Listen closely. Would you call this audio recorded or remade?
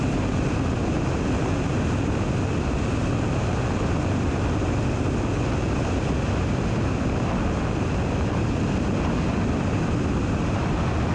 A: recorded